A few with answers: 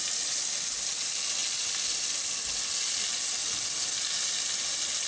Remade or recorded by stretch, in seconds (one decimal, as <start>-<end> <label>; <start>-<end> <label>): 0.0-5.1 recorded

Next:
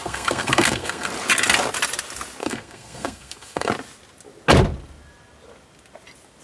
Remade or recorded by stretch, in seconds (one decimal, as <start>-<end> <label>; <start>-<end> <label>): 0.0-1.1 remade; 1.1-2.4 recorded; 2.4-3.7 remade; 3.7-6.4 recorded

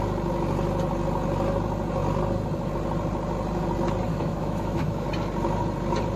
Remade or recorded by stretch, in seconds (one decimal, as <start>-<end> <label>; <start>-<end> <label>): 0.0-4.1 recorded; 4.1-5.1 remade; 5.1-6.2 recorded

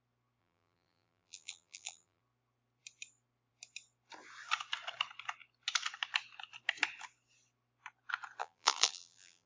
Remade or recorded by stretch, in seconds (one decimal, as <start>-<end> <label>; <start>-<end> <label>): 0.0-0.4 recorded; 0.4-2.2 remade; 2.2-8.4 recorded; 8.4-9.5 remade

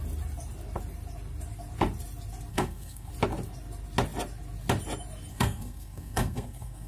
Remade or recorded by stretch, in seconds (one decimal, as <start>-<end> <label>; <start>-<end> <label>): 0.0-2.5 recorded; 2.5-3.1 remade; 3.1-5.3 recorded; 5.3-6.9 remade

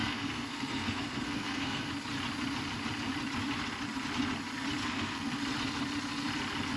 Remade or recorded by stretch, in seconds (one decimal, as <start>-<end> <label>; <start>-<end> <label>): 0.0-1.9 remade; 1.9-4.8 recorded; 4.8-5.4 remade; 5.4-6.8 recorded

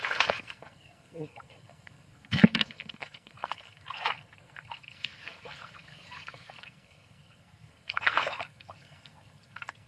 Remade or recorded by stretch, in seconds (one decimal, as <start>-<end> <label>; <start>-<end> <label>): 0.0-9.9 remade